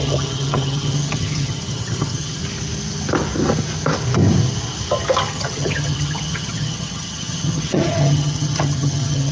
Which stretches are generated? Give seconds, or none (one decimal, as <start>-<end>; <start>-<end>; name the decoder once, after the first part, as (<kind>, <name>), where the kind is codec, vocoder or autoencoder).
0.0-2.4 (vocoder, HiFi-GAN); 5.3-9.3